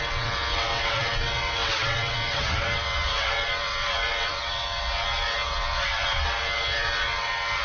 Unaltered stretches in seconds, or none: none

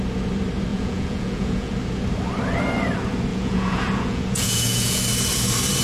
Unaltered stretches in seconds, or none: 0.0-0.7; 1.7-3.3; 5.0-5.8